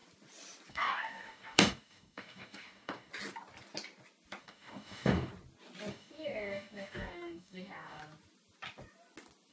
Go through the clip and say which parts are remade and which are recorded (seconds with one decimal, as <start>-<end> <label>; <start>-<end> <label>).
0.0-0.7 recorded; 0.7-3.1 remade; 3.1-4.4 recorded; 4.4-5.3 remade; 5.3-5.9 recorded; 5.9-8.0 remade; 8.0-9.5 recorded